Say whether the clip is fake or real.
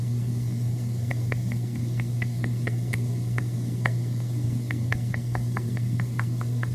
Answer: fake